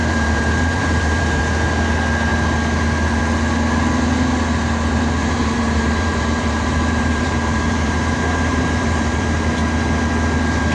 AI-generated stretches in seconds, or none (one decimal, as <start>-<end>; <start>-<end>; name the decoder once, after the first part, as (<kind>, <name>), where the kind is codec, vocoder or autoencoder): 0.0-1.4 (vocoder, BigVGAN v2); 5.2-9.6